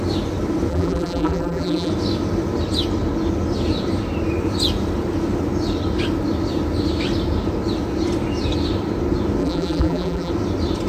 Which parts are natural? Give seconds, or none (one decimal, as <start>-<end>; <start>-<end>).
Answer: 0.0-0.7; 1.9-9.4; 10.3-10.9